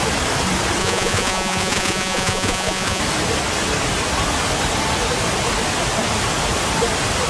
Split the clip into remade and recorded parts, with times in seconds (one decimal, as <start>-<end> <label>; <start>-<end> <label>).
0.0-0.8 recorded; 0.8-3.0 remade; 3.0-7.3 recorded